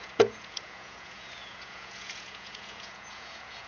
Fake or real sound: fake